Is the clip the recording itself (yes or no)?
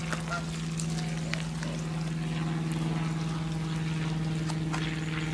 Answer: yes